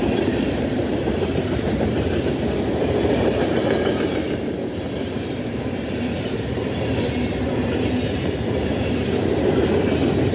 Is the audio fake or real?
fake